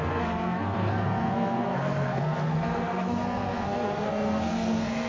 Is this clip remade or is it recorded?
remade